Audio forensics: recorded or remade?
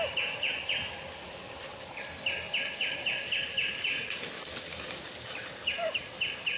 recorded